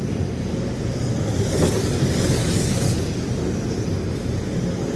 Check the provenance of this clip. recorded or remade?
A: recorded